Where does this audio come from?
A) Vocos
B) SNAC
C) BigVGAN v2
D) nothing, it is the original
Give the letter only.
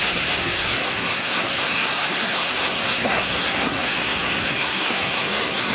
B